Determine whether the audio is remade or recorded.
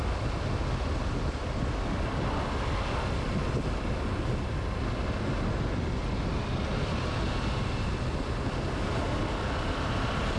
recorded